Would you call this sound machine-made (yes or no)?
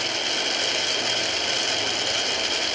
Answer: no